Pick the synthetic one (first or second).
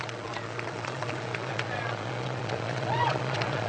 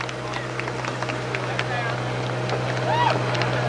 first